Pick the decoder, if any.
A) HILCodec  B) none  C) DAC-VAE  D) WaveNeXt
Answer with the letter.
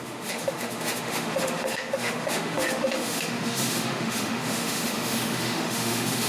C